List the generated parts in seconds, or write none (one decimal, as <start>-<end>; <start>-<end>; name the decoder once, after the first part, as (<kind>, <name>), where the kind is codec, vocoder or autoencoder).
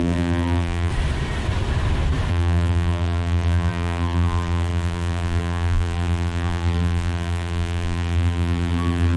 0.0-0.9 (vocoder, BigVGAN v2); 2.3-9.2